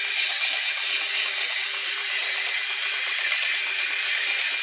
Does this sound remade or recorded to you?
recorded